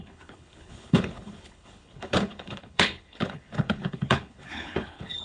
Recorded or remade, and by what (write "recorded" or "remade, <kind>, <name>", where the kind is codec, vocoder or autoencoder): remade, codec, HILCodec